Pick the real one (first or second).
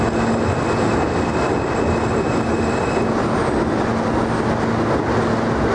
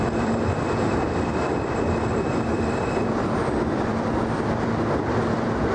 first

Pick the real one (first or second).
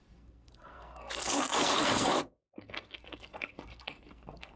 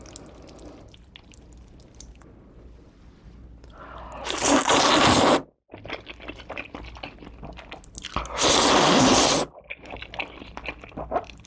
second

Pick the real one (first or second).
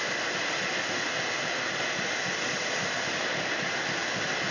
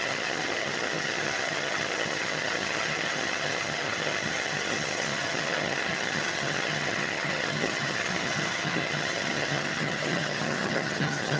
first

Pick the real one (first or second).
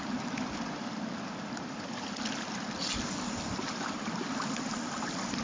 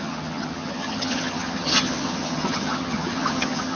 first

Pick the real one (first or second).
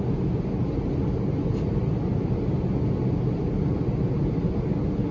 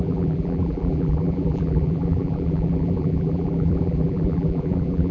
first